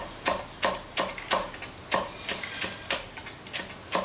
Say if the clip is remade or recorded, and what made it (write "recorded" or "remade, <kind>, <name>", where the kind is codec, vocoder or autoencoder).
recorded